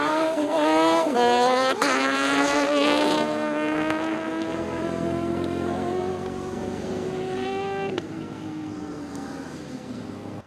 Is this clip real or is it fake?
fake